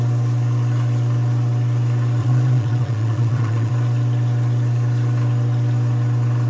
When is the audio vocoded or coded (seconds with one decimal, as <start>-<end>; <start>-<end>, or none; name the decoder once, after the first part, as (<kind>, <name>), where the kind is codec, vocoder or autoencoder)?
2.2-3.7 (vocoder, Vocos)